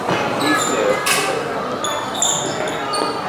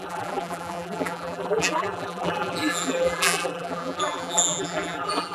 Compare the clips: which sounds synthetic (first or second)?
second